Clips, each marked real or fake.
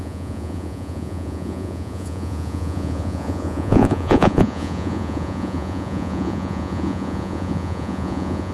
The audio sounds fake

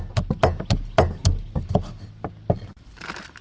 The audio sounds real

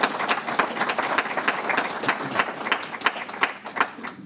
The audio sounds real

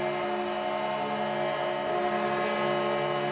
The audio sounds real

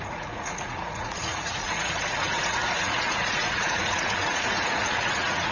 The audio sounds fake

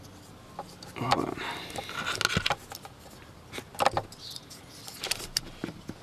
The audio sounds real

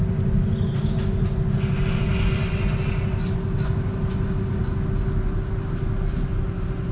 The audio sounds real